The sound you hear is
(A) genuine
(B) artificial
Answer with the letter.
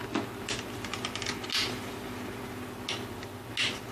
A